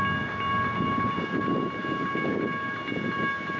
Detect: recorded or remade recorded